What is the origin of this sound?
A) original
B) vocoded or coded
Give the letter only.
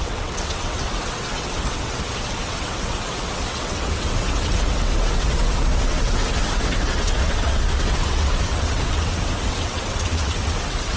B